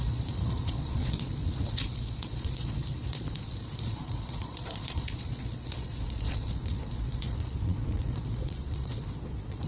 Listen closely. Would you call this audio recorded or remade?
remade